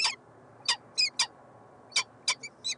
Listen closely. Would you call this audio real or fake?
real